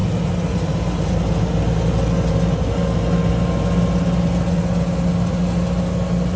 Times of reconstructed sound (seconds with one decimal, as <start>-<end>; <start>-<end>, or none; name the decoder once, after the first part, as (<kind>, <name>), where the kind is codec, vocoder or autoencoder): none